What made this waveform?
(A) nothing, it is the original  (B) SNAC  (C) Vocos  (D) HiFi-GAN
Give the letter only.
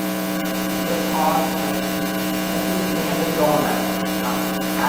C